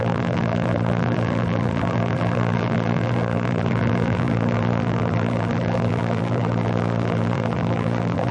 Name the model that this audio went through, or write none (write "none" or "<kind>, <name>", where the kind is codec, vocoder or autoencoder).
vocoder, BigVGAN v2